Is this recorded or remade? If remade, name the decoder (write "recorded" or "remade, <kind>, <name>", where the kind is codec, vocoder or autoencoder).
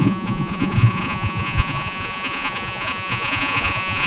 remade, vocoder, Vocos